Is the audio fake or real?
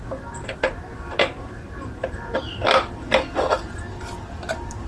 real